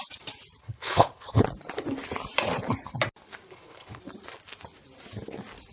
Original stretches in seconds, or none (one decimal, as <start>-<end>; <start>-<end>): 0.0-0.6; 1.4-3.5; 4.0-5.7